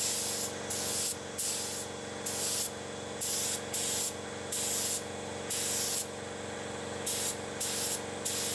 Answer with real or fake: real